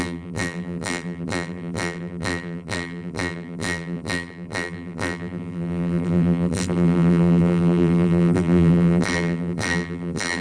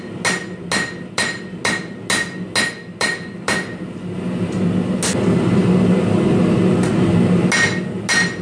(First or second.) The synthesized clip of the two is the first